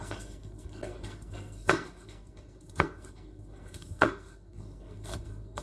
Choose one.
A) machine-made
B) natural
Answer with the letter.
A